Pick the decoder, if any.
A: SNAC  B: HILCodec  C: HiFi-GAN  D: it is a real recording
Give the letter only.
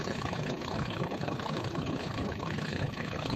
B